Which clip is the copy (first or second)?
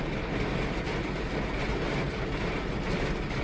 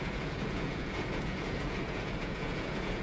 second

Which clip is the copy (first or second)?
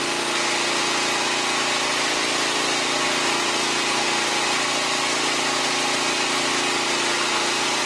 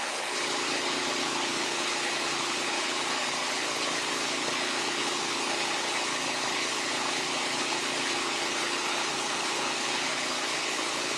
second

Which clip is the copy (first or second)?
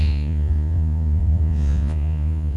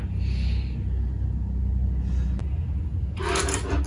first